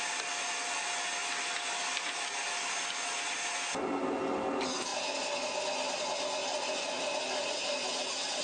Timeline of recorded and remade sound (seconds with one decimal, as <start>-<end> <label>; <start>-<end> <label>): 0.0-8.4 recorded